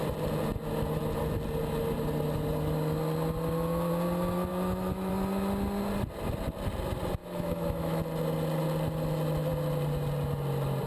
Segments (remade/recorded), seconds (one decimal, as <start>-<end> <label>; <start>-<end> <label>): 0.0-4.5 recorded; 4.5-5.1 remade; 5.1-7.2 recorded; 7.2-8.0 remade; 8.0-10.9 recorded